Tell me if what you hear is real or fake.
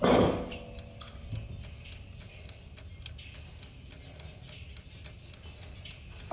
real